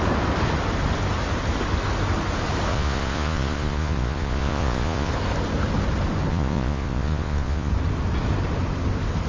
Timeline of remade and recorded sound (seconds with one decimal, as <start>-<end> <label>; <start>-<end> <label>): 0.0-2.7 recorded; 2.7-5.1 remade; 5.1-6.3 recorded; 6.3-7.7 remade; 7.7-9.3 recorded